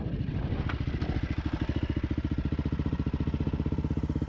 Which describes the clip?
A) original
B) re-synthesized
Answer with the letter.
A